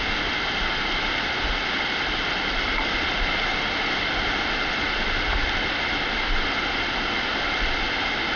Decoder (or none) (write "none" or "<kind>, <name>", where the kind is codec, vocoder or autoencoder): none